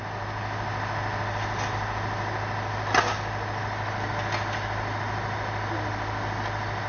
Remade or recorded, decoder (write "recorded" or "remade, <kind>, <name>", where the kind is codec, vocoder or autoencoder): recorded